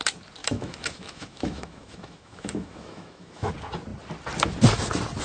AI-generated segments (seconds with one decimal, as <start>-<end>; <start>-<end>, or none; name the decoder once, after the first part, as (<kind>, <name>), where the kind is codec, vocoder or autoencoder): 0.4-3.5 (autoencoder, DAC-VAE)